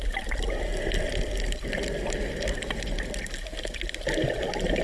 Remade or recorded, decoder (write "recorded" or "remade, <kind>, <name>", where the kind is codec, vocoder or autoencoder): recorded